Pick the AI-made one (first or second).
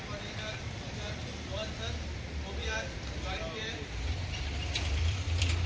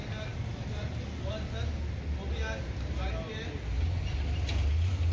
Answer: first